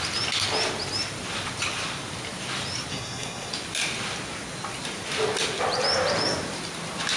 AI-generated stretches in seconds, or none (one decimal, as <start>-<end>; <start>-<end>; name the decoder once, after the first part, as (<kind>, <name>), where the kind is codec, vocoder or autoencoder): 2.9-3.5 (codec, SNAC)